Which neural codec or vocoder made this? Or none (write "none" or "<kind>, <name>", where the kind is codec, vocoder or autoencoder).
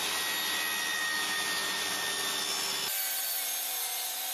none